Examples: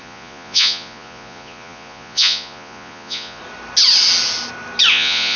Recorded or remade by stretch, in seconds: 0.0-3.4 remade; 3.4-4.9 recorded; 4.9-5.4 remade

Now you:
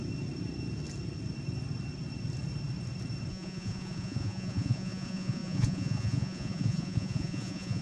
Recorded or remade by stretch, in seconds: 0.0-3.3 recorded; 3.3-7.8 remade

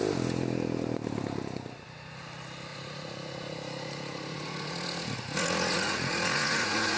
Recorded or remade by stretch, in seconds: 0.0-2.7 recorded; 2.7-7.0 remade

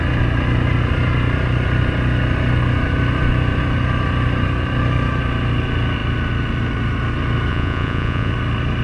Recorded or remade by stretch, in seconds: 0.0-7.5 recorded; 7.5-8.3 remade; 8.3-8.8 recorded

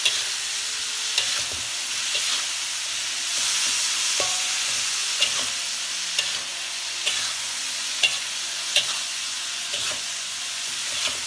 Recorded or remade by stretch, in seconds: 0.0-3.3 recorded; 3.3-5.2 remade; 5.2-6.5 recorded; 6.5-10.7 remade; 10.7-11.3 recorded

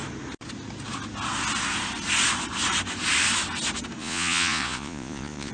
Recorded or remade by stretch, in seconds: 0.0-4.0 recorded; 4.0-5.5 remade

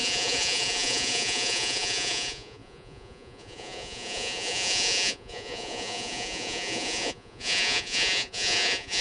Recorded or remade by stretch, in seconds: 0.0-9.0 remade